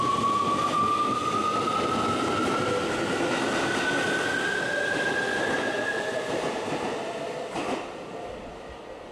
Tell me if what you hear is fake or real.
real